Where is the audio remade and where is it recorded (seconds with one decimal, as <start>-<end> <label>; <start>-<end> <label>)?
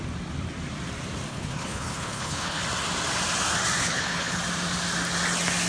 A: 0.0-1.3 recorded; 1.3-2.6 remade; 2.6-3.8 recorded; 3.8-4.4 remade; 4.4-5.7 recorded